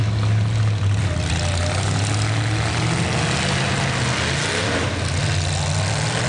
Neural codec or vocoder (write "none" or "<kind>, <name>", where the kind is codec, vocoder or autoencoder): none